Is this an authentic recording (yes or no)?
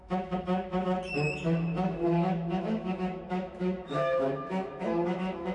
no